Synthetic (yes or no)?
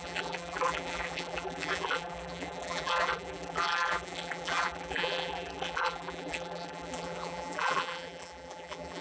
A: yes